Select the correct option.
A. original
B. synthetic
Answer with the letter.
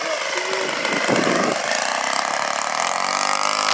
A